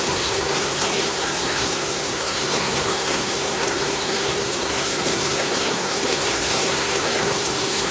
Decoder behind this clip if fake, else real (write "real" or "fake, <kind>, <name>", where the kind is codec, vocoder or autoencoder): fake, codec, SNAC